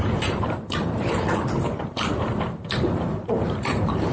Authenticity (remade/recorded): remade